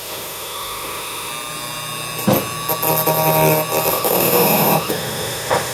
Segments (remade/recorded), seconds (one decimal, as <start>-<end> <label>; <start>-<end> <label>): 0.0-1.3 remade; 1.3-3.9 recorded; 3.9-5.7 remade